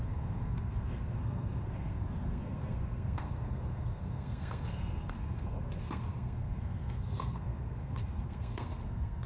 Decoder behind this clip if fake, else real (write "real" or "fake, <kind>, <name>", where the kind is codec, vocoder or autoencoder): fake, codec, SNAC